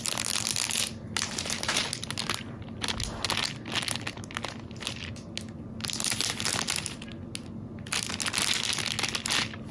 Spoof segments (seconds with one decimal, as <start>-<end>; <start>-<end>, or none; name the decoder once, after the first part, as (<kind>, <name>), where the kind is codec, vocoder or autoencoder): none